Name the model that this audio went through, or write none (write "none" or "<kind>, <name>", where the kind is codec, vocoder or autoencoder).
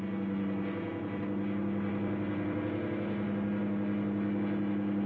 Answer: none